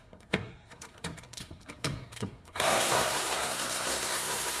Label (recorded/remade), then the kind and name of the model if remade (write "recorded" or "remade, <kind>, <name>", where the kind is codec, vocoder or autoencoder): remade, codec, SNAC